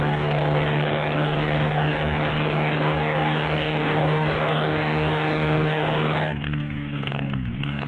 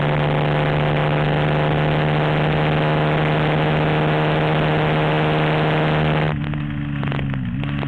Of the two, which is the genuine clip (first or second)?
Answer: second